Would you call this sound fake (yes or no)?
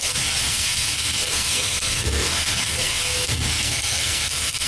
yes